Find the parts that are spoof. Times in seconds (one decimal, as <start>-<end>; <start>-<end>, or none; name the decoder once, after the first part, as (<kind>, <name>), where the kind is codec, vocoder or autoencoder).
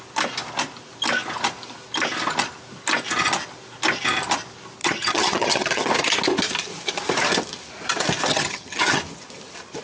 4.8-5.9 (vocoder, HiFi-GAN); 8.3-9.0